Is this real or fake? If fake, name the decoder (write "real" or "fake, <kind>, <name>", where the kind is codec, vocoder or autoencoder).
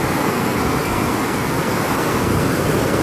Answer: fake, codec, SNAC